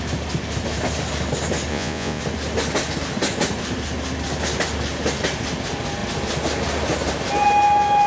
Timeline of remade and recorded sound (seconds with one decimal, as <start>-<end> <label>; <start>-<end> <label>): 0.0-1.7 recorded; 1.7-2.2 remade; 2.2-8.1 recorded